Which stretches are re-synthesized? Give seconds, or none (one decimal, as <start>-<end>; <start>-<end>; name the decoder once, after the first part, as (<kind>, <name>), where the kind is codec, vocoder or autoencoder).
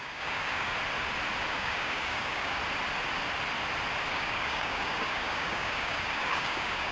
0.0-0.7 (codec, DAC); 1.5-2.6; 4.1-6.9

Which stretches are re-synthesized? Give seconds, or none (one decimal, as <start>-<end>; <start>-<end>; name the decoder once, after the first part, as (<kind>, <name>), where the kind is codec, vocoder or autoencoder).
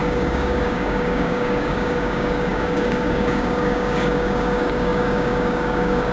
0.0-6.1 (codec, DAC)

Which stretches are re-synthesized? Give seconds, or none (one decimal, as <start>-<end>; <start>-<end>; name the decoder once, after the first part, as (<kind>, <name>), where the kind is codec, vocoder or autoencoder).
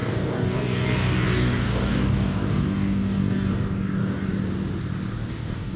0.0-4.3 (codec, DAC); 5.3-5.8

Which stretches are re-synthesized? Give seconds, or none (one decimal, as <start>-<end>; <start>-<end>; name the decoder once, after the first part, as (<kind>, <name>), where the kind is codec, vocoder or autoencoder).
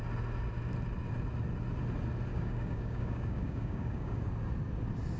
2.3-4.3 (codec, DAC)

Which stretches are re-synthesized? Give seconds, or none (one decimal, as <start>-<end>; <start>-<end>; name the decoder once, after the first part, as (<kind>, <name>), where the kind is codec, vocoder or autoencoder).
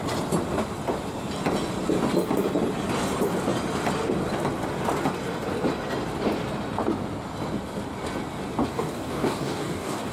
8.6-10.1 (codec, DAC)